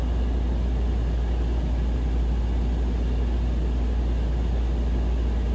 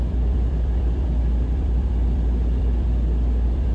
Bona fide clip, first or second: first